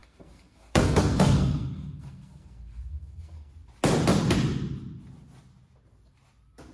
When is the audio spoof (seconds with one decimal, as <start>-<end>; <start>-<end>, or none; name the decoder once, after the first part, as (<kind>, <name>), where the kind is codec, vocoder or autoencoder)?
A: 0.0-3.5 (codec, SNAC)